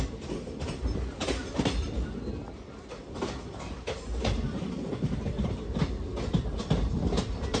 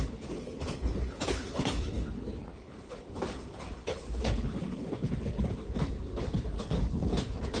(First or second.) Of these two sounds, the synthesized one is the second